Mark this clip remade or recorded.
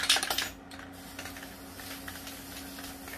recorded